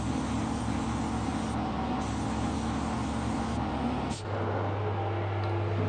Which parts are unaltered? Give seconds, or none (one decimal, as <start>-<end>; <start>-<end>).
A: 0.0-5.9